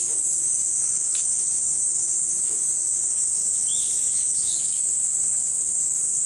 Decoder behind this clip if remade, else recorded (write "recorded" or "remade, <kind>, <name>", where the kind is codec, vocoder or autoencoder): remade, codec, DAC